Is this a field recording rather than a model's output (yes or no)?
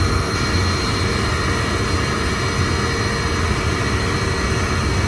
yes